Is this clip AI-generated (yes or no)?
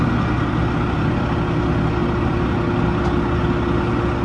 no